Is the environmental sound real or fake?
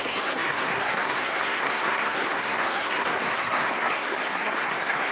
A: fake